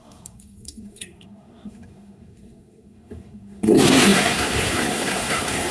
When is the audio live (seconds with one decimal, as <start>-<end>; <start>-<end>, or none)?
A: none